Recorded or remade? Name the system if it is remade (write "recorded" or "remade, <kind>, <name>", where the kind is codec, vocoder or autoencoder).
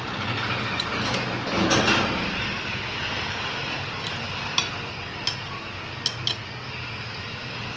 recorded